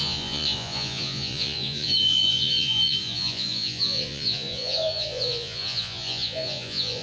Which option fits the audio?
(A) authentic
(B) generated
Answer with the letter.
B